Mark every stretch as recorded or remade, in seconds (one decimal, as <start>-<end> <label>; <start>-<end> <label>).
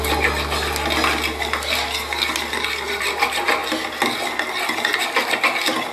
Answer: 0.0-5.9 recorded